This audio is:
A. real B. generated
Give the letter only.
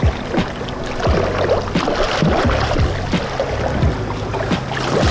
A